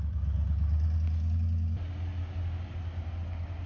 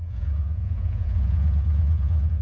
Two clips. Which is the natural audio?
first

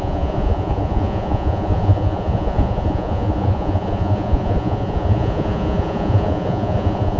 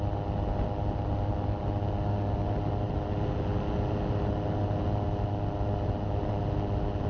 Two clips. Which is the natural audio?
second